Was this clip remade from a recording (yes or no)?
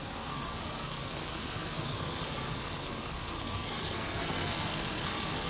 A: yes